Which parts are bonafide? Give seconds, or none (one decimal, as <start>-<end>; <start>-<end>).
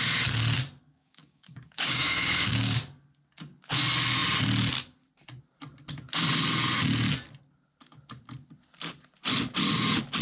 0.0-0.9; 2.8-10.2